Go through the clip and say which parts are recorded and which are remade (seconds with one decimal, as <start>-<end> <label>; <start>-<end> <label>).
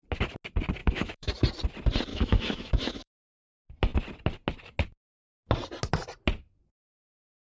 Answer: 0.0-0.8 recorded; 0.8-1.3 remade; 1.3-2.1 recorded; 2.1-3.3 remade; 3.3-7.6 recorded